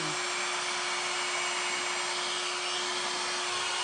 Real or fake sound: real